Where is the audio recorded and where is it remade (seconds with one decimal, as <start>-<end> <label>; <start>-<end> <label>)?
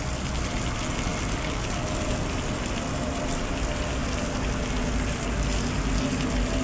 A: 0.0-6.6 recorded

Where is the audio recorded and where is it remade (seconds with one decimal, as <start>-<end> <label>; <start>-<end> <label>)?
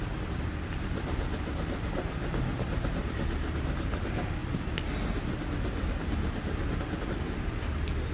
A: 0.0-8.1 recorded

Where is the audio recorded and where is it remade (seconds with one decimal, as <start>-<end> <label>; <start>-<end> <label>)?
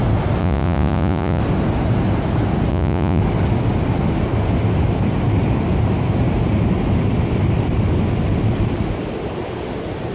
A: 0.0-0.4 recorded; 0.4-1.4 remade; 1.4-2.7 recorded; 2.7-3.2 remade; 3.2-10.1 recorded